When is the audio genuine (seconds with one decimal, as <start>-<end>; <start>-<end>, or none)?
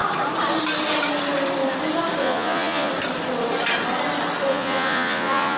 0.0-2.2; 2.9-4.5